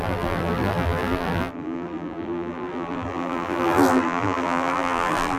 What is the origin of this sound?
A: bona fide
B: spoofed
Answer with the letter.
B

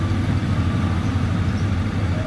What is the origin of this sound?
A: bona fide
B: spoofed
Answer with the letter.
A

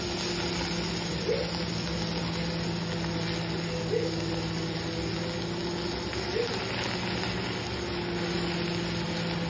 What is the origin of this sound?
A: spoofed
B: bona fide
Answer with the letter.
B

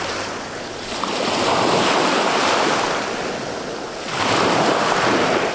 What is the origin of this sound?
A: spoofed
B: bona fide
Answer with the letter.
B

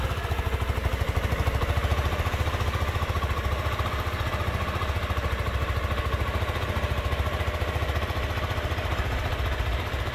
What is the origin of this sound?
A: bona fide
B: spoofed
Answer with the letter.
A